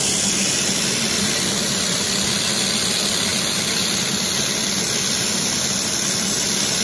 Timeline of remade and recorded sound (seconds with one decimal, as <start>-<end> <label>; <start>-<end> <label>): 0.0-6.8 recorded